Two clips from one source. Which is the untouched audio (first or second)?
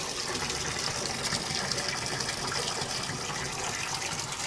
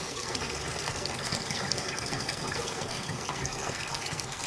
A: first